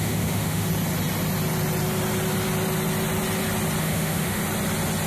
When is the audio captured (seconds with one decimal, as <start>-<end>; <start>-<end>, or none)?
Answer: 0.7-3.8; 4.4-5.1